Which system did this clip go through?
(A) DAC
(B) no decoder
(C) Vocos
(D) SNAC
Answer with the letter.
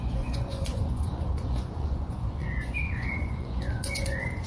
C